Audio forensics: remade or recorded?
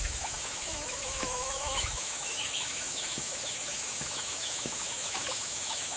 remade